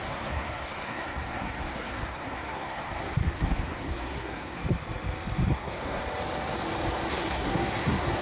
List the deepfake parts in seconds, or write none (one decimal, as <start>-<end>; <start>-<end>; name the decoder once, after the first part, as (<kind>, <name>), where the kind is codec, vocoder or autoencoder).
0.0-4.6 (codec, SNAC); 5.5-6.0; 7.1-8.2